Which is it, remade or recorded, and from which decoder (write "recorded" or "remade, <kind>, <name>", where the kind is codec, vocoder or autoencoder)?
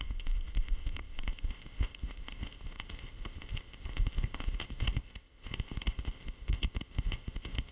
remade, codec, ZipCodec